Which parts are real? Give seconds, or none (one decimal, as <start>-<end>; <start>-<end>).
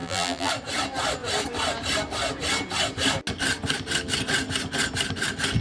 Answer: 0.5-5.6